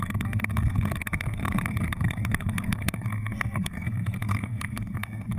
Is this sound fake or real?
fake